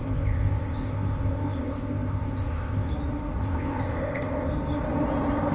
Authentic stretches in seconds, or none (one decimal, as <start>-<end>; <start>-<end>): 2.9-3.4; 4.5-5.5

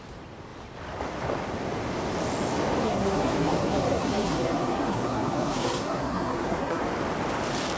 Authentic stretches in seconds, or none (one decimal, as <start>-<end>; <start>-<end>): 0.0-2.8; 6.8-7.8

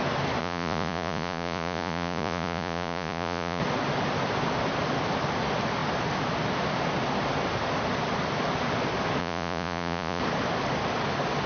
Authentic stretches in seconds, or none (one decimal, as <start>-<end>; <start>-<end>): 0.0-0.4; 3.6-9.2; 10.2-11.5

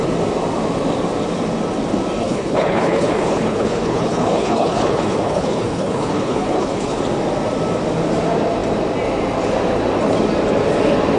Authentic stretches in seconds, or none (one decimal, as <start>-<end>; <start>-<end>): 0.0-2.2; 7.0-11.2

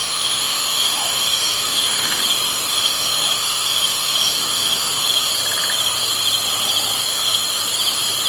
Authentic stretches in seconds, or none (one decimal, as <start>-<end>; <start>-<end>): 2.2-2.7; 5.3-7.1; 7.6-8.3

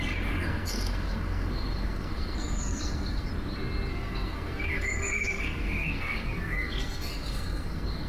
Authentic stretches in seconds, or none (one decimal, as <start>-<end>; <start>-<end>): 3.3-3.9

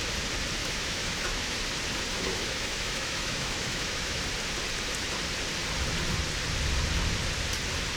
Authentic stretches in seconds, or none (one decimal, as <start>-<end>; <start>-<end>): 0.0-0.6; 1.6-2.1; 4.2-8.0

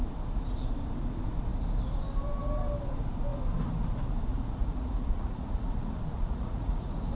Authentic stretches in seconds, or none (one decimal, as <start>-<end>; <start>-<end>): 0.0-4.3